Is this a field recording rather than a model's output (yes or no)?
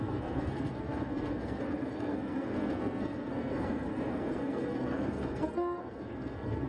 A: no